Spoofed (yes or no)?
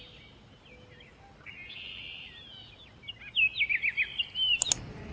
no